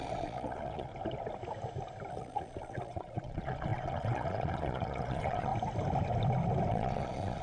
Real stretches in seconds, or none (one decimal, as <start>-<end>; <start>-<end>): 0.9-2.1; 5.5-6.7